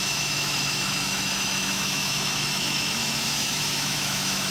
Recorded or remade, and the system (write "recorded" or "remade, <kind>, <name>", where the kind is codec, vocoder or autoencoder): remade, autoencoder, DAC-VAE